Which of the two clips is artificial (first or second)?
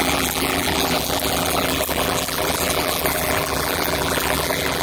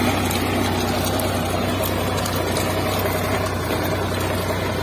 first